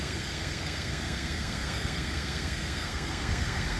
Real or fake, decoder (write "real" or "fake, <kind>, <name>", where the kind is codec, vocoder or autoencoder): fake, codec, SNAC